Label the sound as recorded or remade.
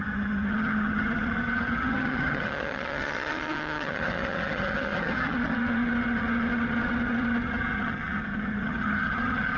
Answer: remade